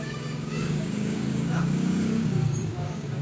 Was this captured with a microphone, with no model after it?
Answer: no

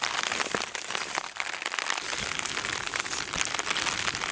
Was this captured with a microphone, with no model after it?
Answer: yes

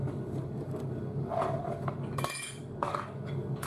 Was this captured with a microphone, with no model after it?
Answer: no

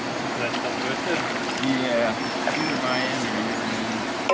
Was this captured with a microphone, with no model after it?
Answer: yes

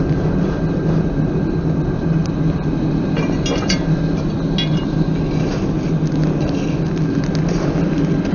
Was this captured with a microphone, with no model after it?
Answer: yes